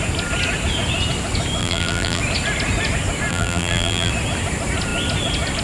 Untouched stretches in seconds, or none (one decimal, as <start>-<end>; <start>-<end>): 0.0-1.6; 2.2-3.3; 4.1-5.6